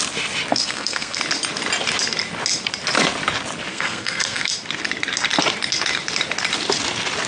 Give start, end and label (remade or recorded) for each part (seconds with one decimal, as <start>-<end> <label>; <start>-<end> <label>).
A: 0.0-0.5 recorded; 0.5-1.2 remade; 1.2-3.7 recorded; 3.7-4.5 remade; 4.5-7.3 recorded